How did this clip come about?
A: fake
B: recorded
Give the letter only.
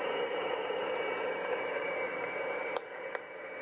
A